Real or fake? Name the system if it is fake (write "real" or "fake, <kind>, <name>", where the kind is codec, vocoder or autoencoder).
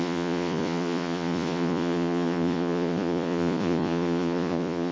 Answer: fake, vocoder, Vocos